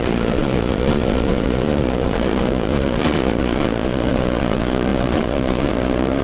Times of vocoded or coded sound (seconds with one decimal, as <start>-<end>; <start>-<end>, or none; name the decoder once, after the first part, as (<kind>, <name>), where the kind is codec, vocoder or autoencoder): 0.0-6.2 (vocoder, Vocos)